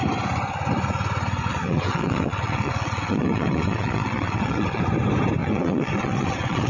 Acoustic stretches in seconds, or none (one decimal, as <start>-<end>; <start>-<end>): 0.0-1.4; 4.8-5.4